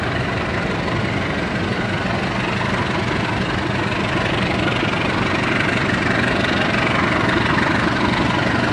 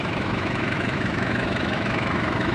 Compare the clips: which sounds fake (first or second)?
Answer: second